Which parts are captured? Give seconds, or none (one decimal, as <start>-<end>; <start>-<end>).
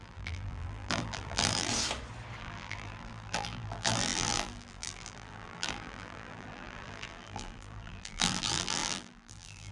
1.7-2.4